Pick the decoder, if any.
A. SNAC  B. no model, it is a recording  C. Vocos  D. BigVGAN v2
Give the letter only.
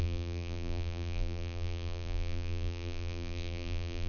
D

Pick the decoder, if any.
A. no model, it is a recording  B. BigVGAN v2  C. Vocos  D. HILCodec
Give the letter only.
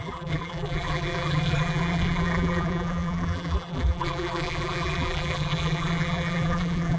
B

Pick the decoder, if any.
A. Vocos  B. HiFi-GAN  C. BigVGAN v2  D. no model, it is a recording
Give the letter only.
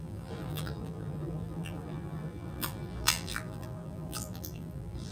C